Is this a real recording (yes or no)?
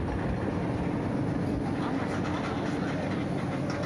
yes